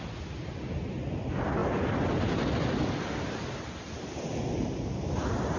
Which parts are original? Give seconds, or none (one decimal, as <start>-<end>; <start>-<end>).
0.0-5.6